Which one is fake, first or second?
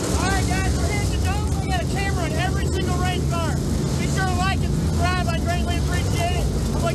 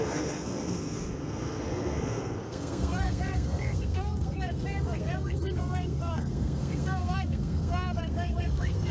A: second